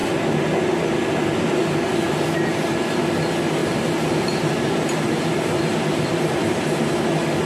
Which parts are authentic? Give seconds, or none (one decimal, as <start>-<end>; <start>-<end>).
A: 0.0-3.6; 6.8-7.5